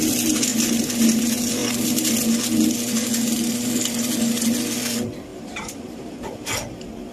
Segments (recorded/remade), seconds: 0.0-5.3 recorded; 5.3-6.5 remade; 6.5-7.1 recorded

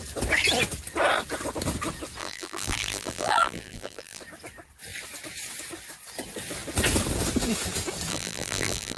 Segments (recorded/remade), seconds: 0.0-2.2 recorded; 2.2-4.2 remade; 4.2-8.1 recorded; 8.1-9.0 remade

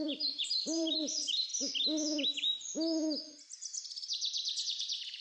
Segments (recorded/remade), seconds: 0.0-1.5 remade; 1.5-2.3 recorded; 2.3-2.7 remade; 2.7-4.6 recorded; 4.6-5.2 remade

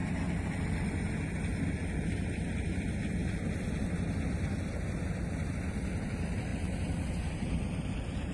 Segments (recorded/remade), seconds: 0.0-1.9 recorded; 1.9-8.3 remade